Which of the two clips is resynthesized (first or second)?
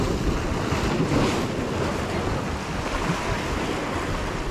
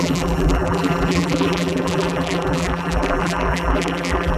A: second